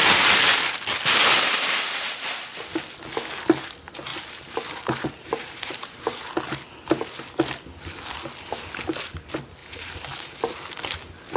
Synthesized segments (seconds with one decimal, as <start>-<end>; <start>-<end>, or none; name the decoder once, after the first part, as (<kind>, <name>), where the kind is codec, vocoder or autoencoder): 4.1-6.3 (vocoder, BigVGAN v2); 9.6-10.4